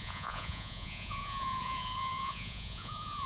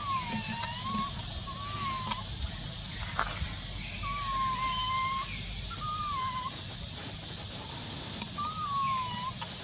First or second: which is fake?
first